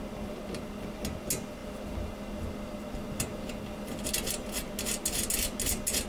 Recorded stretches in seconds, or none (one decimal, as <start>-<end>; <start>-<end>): 0.0-6.1